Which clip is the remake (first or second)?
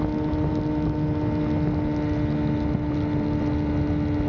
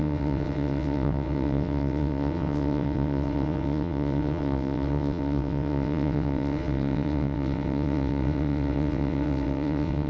second